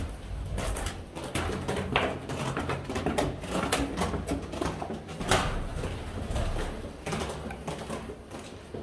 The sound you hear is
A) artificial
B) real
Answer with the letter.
B